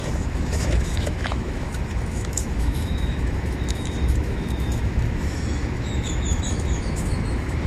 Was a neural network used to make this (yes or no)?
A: yes